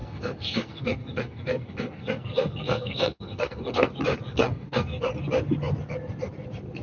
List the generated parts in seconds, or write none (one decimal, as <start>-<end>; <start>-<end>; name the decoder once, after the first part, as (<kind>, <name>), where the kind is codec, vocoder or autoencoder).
0.0-3.9 (codec, SNAC); 4.3-5.0